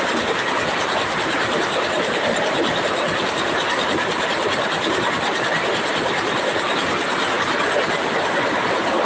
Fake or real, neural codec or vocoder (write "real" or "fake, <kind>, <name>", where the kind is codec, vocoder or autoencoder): real